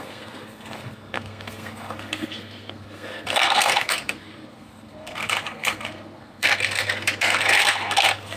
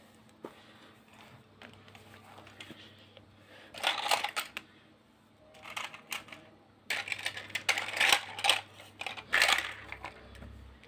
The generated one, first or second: first